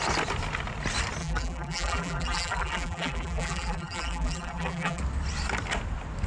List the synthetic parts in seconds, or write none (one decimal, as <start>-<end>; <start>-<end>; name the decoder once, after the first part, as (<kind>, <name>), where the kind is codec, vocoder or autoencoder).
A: 1.2-5.0 (vocoder, BigVGAN v2)